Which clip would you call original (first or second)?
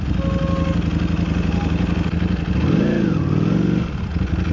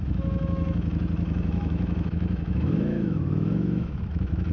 first